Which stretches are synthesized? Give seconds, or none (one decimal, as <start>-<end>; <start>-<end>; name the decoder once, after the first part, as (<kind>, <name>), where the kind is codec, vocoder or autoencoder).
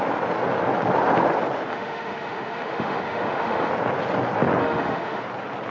1.7-3.7 (autoencoder, DAC-VAE); 4.6-5.2